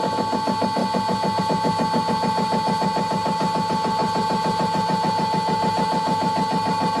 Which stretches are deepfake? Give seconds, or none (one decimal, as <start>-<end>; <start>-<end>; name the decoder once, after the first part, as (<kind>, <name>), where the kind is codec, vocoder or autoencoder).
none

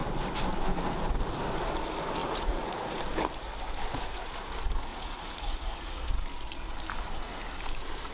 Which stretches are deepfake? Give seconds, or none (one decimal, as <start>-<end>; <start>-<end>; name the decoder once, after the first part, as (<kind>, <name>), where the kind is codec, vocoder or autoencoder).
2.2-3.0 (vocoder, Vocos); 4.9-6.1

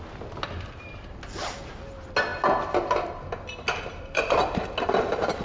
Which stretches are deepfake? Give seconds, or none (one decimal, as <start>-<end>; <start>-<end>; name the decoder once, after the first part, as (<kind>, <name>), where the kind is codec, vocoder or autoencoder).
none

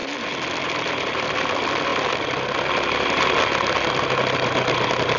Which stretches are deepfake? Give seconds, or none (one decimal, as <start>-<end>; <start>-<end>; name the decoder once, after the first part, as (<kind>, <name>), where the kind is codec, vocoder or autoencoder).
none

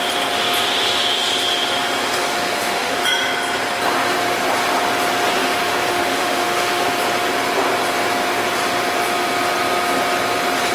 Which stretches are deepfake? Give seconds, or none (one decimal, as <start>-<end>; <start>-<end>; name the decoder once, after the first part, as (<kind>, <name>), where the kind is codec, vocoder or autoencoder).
2.3-3.0 (autoencoder, DAC-VAE); 5.4-6.9

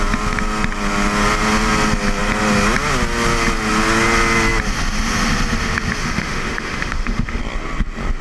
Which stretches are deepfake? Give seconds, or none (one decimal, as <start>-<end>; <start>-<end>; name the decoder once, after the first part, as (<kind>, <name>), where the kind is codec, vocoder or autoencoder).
6.0-7.4 (autoencoder, DAC-VAE)